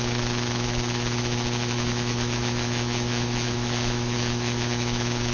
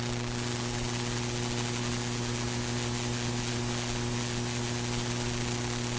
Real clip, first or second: second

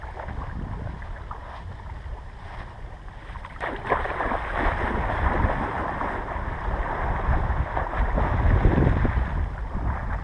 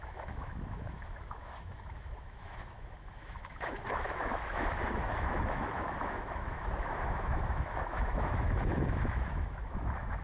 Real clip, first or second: first